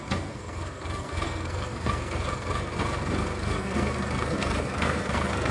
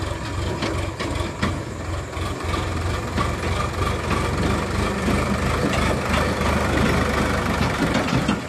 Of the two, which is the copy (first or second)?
first